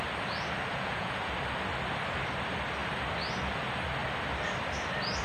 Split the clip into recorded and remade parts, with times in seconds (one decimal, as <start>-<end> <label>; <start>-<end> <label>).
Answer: 0.0-0.7 recorded; 0.7-1.3 remade; 1.3-5.2 recorded